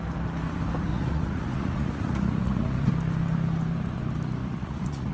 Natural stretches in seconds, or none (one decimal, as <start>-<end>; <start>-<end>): 0.0-0.9; 2.9-4.4

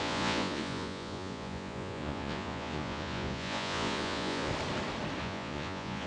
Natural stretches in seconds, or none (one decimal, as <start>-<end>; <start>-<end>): 4.5-5.2

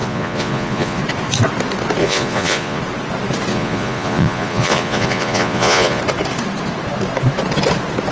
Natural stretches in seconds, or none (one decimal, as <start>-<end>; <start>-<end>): 1.0-2.0; 2.8-3.5; 6.0-8.1

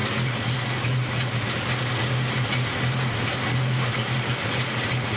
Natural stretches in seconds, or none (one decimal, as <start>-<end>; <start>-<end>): 0.0-5.2

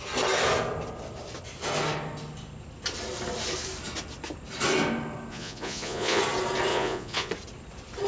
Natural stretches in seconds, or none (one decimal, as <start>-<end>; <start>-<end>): 0.0-5.3; 6.2-6.7; 7.3-8.1

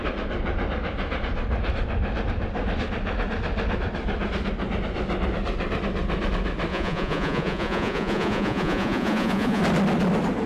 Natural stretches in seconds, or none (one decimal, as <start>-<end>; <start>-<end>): 0.0-6.7; 9.6-10.5

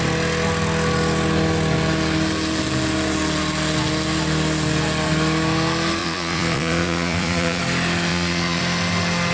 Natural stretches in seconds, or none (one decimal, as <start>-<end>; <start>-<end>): 0.0-6.0; 7.6-8.1; 8.6-9.3